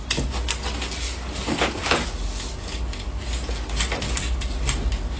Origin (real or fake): real